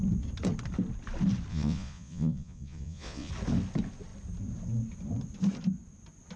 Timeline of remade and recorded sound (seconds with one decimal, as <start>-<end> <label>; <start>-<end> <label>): 0.0-1.5 recorded; 1.5-3.3 remade; 3.3-6.4 recorded